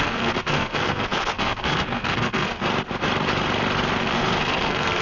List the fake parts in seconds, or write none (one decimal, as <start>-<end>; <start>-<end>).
0.0-2.6; 4.0-5.0